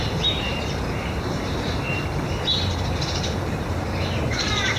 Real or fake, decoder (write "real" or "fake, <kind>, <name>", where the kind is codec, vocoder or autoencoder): fake, vocoder, BigVGAN v2